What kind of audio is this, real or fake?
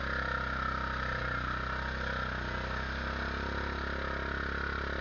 real